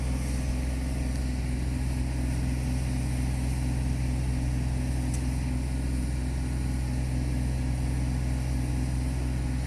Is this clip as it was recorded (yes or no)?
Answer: yes